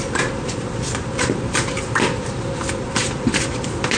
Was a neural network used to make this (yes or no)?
no